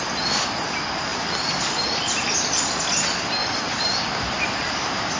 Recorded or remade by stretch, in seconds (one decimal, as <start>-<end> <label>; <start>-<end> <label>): 0.0-1.1 recorded; 1.1-2.0 remade; 2.0-3.4 recorded; 3.4-5.2 remade